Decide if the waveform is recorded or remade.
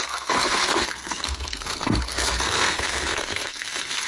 remade